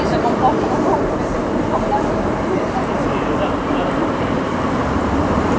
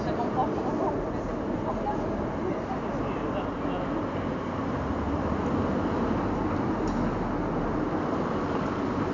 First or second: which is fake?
first